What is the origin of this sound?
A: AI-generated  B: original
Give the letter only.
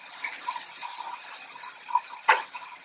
B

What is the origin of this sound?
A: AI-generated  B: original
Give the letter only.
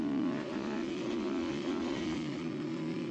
A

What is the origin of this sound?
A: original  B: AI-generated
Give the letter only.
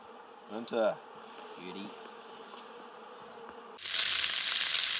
A